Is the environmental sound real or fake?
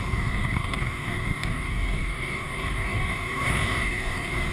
fake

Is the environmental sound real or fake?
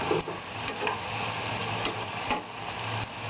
real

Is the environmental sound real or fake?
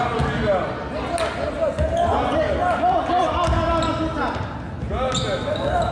real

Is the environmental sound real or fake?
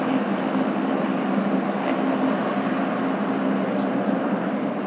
real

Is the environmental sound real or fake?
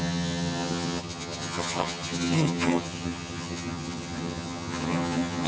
fake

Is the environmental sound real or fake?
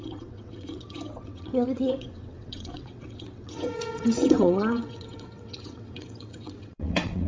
fake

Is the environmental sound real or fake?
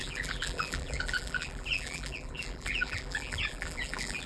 fake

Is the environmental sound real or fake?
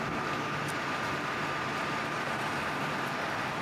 real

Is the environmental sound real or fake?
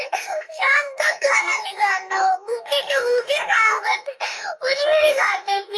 fake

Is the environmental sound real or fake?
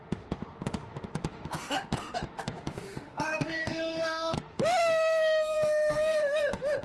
fake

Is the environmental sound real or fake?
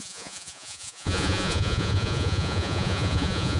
fake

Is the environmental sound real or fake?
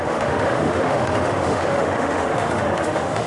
fake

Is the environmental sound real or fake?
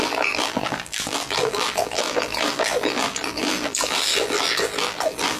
fake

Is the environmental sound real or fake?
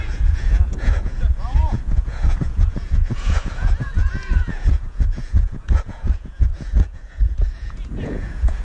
fake